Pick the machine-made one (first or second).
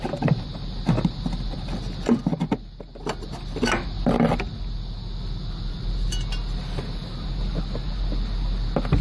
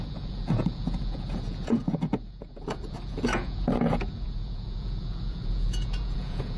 second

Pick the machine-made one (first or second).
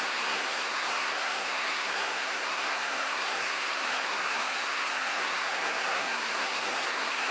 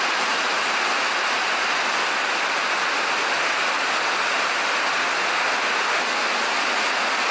first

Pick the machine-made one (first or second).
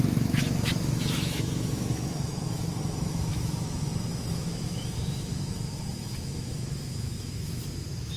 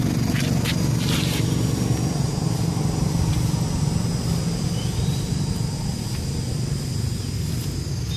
first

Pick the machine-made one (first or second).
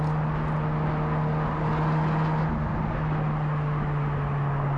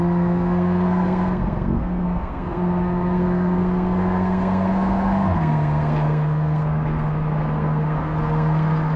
second